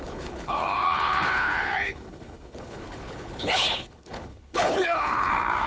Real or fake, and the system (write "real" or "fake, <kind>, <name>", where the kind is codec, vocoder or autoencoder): fake, codec, HILCodec